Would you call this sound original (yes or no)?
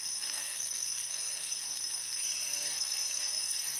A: no